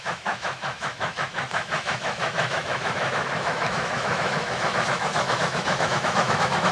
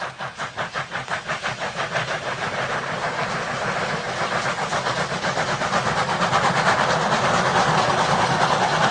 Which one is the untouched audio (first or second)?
second